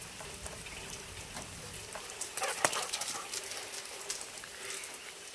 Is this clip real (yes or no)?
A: yes